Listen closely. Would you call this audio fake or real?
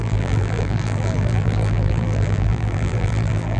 fake